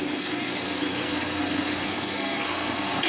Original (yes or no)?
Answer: no